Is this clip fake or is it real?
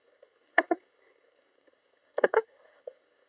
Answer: fake